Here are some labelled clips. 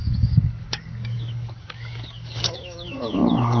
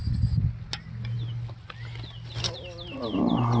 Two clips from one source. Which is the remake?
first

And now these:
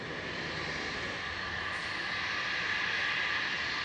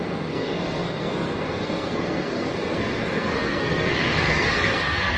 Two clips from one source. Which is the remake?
second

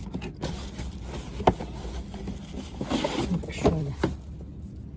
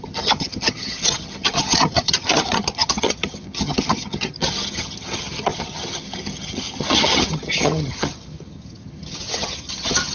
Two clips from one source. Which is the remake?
second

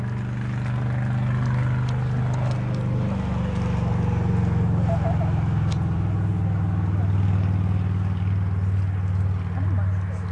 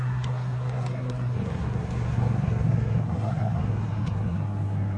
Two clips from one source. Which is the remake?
second